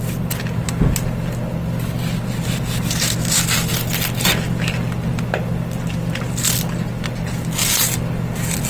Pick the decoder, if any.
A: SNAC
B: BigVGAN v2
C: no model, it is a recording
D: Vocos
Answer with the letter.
C